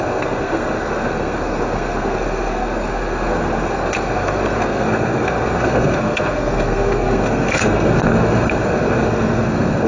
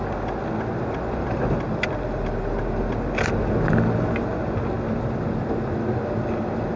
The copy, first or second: first